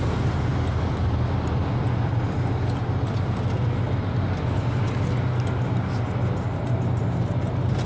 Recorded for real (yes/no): yes